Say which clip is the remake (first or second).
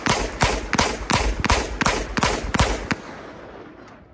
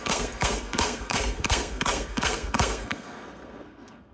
second